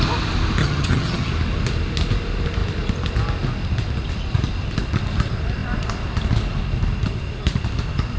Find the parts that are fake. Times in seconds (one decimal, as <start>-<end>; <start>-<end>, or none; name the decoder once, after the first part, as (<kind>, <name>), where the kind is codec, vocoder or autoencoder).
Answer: 0.6-1.3 (vocoder, HiFi-GAN)